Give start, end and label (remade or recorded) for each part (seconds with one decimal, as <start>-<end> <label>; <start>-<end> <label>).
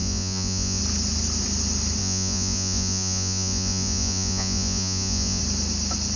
0.0-0.8 remade; 0.8-2.0 recorded; 2.0-5.4 remade; 5.4-6.2 recorded